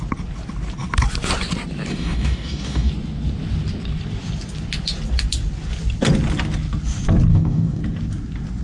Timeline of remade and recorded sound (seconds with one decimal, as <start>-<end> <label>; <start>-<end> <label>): 0.0-1.9 recorded; 1.9-2.9 remade; 2.9-7.3 recorded; 7.3-7.8 remade; 7.8-8.6 recorded